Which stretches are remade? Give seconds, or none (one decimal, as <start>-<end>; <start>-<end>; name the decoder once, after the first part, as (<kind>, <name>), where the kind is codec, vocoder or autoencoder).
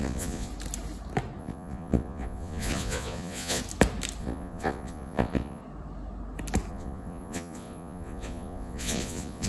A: 0.0-0.5 (vocoder, Vocos); 1.4-3.6; 4.2-5.6; 6.7-9.5